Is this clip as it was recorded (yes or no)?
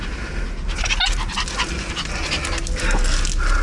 yes